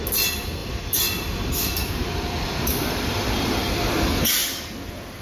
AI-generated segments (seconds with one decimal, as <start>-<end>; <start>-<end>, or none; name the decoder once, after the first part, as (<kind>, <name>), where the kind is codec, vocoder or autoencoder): 0.6-3.7 (vocoder, BigVGAN v2)